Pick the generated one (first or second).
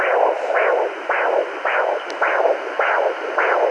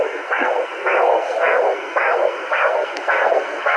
second